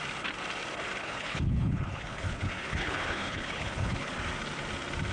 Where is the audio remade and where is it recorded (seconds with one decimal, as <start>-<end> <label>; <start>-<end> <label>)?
0.0-1.0 recorded; 1.0-4.1 remade; 4.1-5.1 recorded